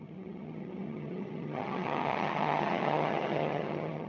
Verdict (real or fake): fake